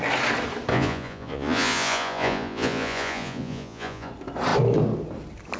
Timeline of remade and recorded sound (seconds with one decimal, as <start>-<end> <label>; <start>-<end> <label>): 0.0-0.7 recorded; 0.7-4.1 remade; 4.1-5.6 recorded